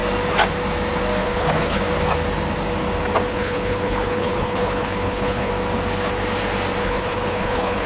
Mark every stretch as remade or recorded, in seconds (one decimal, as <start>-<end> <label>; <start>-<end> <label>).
0.0-1.2 recorded; 1.2-1.8 remade; 1.8-3.3 recorded; 3.3-5.5 remade; 5.5-6.8 recorded; 6.8-7.9 remade